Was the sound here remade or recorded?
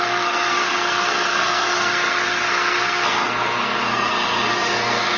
remade